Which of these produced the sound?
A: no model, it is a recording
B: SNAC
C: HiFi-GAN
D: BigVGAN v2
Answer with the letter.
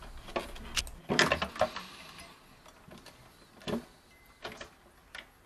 A